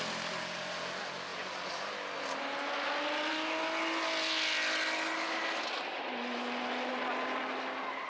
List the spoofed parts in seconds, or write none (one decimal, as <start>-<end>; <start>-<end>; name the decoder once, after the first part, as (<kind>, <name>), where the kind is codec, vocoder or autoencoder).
none